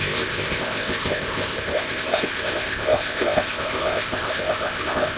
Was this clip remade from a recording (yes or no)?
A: yes